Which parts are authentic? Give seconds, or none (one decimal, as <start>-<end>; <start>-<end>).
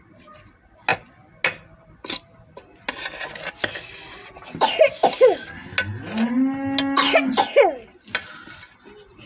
0.0-9.3